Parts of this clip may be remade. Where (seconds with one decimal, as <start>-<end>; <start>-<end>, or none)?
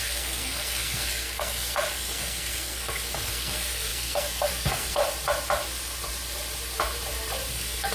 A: 0.0-5.0; 7.5-7.9